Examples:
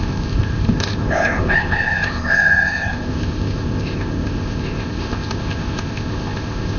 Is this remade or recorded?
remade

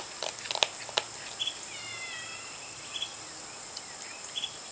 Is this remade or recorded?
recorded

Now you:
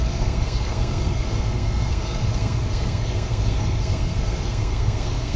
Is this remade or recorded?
remade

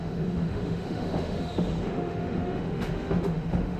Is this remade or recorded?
remade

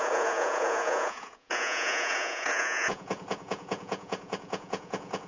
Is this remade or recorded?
remade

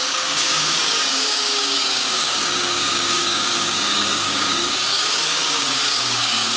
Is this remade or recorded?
remade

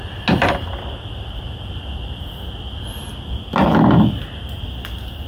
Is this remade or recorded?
recorded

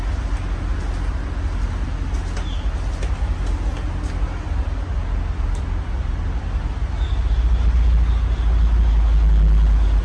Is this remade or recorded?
recorded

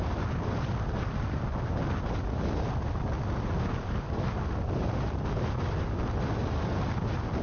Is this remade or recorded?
recorded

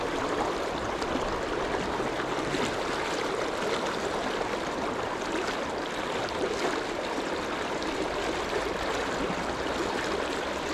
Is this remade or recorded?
recorded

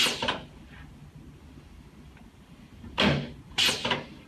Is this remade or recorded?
recorded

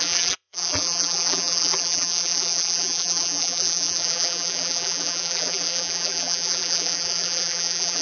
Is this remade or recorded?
remade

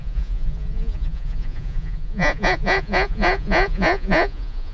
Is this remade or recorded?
remade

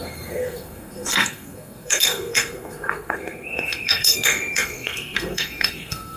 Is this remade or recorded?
remade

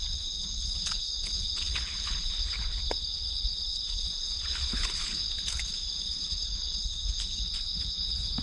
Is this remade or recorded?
remade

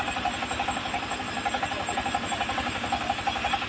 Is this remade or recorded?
recorded